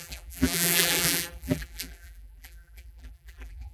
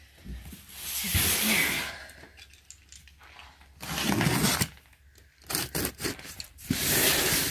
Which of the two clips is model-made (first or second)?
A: first